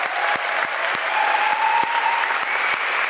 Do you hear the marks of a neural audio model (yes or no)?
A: no